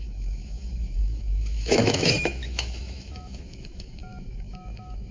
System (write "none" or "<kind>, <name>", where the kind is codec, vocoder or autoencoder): autoencoder, DAC-VAE